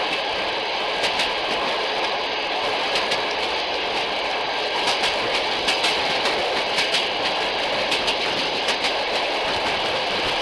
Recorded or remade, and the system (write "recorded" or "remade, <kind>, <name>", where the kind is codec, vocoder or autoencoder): recorded